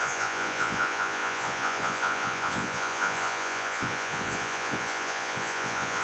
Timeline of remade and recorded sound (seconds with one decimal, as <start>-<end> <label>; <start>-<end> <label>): 0.0-6.0 remade